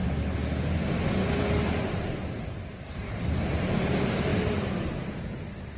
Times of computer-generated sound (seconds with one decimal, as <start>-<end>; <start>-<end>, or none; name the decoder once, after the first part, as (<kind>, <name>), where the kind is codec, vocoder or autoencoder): 2.8-5.8 (vocoder, BigVGAN v2)